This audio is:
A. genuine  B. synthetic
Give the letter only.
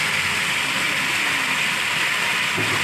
A